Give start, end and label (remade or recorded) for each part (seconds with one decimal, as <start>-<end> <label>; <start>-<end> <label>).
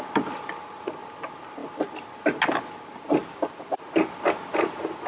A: 0.0-5.1 recorded